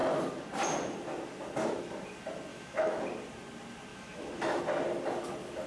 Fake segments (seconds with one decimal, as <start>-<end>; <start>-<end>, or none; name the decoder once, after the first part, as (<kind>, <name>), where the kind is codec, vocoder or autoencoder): 2.5-3.0 (autoencoder, DAC-VAE); 3.9-4.6